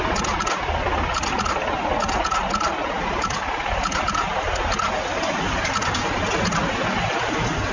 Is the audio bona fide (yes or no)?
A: yes